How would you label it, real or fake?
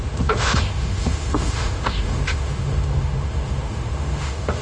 fake